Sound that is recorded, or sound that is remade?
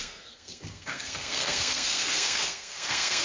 remade